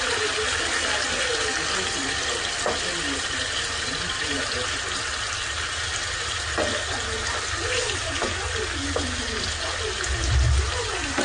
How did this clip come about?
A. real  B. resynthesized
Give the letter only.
A